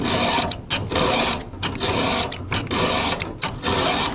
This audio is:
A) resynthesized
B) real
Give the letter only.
B